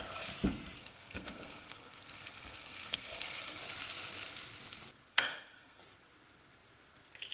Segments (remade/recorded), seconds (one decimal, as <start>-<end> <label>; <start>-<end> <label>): 0.0-0.8 recorded; 0.8-3.6 remade; 3.6-5.1 recorded; 5.1-5.8 remade; 5.8-7.3 recorded